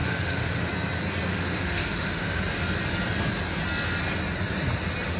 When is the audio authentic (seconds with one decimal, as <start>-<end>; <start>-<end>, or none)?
0.7-1.3; 2.4-5.2